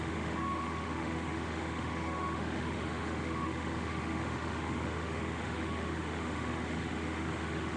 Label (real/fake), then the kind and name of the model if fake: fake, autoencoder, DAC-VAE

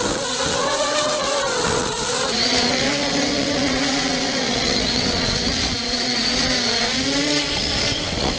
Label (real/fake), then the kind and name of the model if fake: fake, vocoder, WaveNeXt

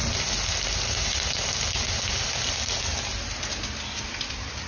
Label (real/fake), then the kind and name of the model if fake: real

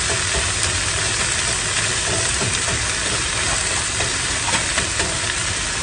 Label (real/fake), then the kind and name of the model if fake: real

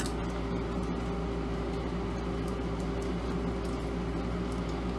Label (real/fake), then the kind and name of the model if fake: real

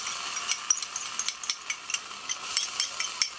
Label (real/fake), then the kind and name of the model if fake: real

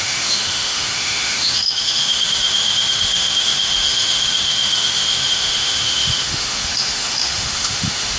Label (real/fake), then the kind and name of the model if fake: fake, autoencoder, DAC-VAE